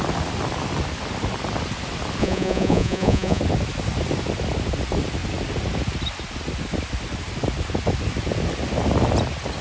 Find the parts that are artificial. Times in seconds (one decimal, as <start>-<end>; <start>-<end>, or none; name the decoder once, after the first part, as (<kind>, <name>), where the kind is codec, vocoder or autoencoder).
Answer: 2.2-3.4 (vocoder, Vocos)